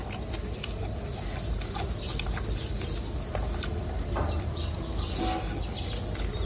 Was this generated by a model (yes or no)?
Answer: no